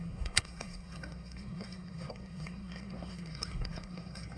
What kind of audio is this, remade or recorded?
remade